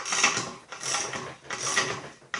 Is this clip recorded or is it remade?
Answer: recorded